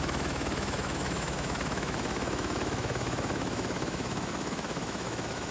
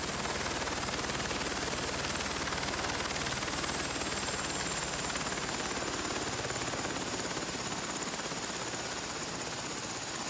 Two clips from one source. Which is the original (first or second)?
second